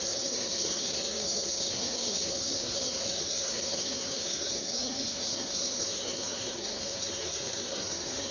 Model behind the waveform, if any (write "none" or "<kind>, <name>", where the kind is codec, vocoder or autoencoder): codec, SNAC